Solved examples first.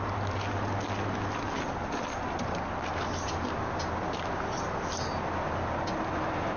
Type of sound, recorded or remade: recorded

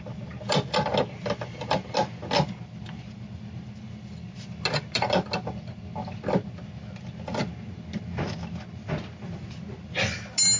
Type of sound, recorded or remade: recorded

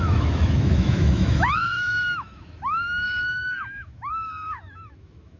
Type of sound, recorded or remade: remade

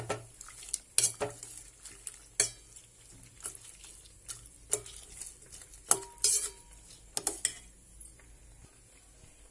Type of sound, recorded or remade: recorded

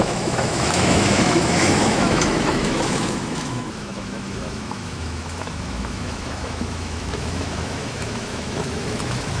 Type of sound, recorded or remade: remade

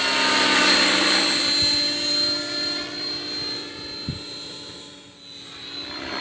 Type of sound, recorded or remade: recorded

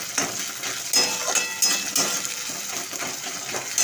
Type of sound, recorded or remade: recorded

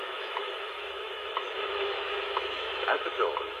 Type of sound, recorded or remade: remade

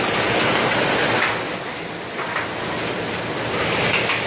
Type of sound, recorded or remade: recorded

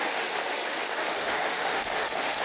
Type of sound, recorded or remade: remade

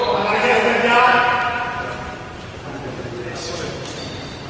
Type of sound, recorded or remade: recorded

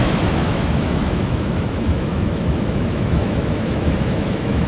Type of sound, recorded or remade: remade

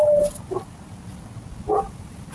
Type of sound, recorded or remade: recorded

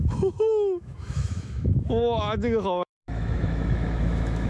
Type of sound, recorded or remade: remade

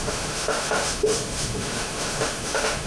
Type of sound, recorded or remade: remade